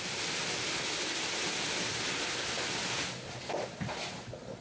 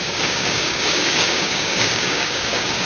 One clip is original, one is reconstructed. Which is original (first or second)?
first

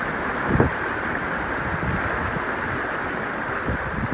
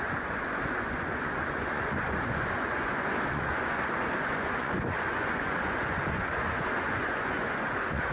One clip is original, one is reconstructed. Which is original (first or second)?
first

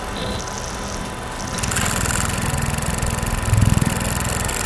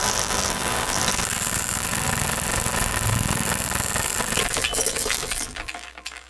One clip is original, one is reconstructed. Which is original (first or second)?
first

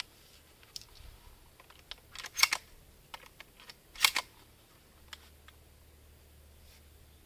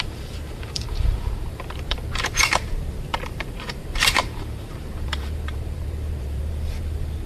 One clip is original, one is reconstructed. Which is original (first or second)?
first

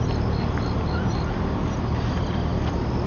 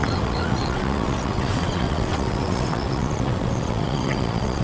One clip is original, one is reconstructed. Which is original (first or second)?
first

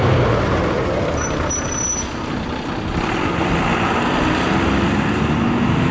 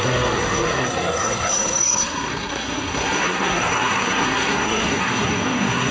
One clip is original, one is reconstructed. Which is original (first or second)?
first